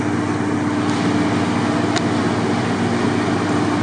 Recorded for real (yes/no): yes